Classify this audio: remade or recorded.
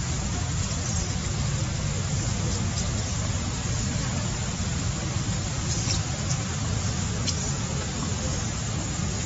recorded